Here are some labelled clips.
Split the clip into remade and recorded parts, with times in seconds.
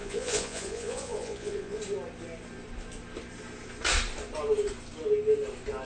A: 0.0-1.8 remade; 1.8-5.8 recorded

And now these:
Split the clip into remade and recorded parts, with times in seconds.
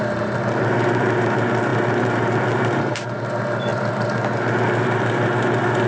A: 0.0-5.9 recorded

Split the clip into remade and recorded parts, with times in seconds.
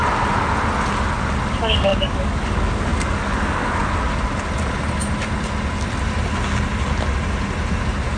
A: 0.0-1.5 recorded; 1.5-3.8 remade; 3.8-8.2 recorded